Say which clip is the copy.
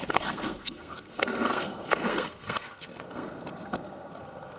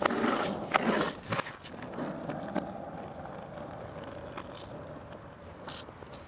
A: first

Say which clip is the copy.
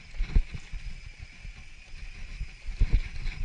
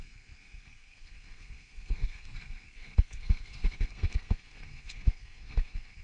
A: second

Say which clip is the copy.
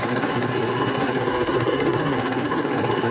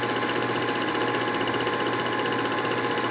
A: first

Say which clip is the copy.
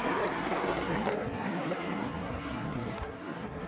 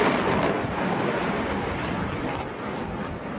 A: first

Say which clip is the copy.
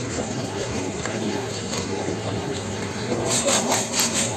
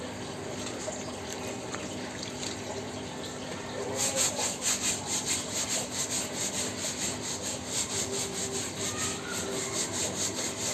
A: first